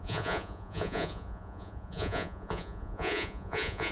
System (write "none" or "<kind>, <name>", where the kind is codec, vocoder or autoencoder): vocoder, Vocos